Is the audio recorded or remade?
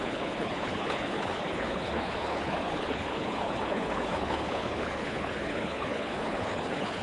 remade